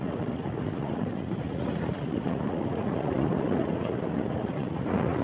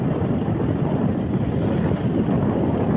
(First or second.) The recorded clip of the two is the second